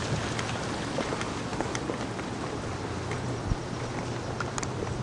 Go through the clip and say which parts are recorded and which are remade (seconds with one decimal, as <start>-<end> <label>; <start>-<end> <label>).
0.0-5.0 recorded